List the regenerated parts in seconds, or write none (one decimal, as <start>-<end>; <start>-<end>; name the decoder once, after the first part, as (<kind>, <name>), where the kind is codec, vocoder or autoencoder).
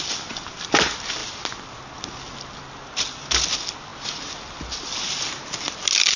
none